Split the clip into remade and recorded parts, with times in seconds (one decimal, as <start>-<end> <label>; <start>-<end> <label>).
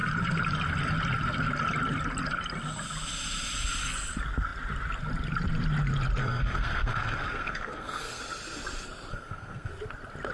0.0-6.2 recorded; 6.2-8.2 remade; 8.2-9.1 recorded; 9.1-9.7 remade; 9.7-10.3 recorded